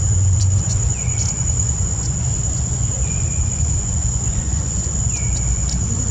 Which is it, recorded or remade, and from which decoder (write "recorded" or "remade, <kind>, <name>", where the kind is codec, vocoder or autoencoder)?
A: remade, vocoder, Vocos